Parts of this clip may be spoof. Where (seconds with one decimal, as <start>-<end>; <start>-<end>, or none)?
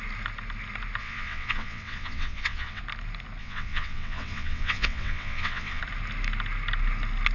1.0-2.8; 3.4-5.8